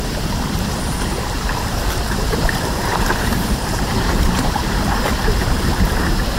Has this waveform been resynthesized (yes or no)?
yes